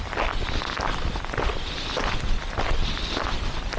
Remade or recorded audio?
remade